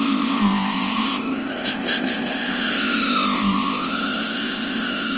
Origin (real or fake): fake